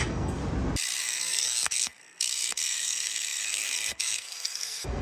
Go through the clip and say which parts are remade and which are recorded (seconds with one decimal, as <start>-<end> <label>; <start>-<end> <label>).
0.0-0.4 remade; 0.4-1.0 recorded; 1.0-5.0 remade